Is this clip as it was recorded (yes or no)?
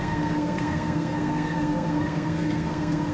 no